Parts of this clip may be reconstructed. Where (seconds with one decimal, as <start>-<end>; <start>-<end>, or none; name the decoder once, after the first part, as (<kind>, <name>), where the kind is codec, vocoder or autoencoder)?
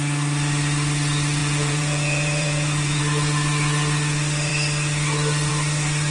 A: 1.4-3.0 (vocoder, Vocos)